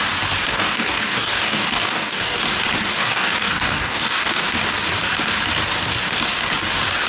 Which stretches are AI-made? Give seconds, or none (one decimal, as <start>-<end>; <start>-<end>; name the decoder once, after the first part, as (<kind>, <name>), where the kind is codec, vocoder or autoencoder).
0.5-2.4 (codec, DAC); 3.0-4.4